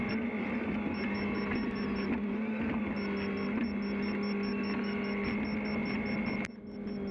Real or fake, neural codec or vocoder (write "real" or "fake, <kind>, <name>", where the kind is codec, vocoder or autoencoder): real